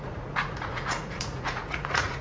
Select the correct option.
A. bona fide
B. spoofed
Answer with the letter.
B